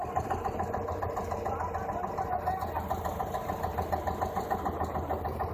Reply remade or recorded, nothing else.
recorded